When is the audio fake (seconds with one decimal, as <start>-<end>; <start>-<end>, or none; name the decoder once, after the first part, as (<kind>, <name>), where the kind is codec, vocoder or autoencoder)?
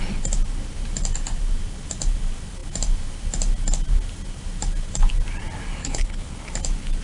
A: 5.8-6.3 (codec, HILCodec)